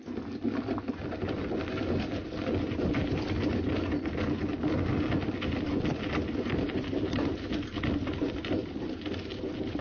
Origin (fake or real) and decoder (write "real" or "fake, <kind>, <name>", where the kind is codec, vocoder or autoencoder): real